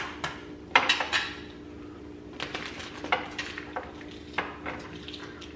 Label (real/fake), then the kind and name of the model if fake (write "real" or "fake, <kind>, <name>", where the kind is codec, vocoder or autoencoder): real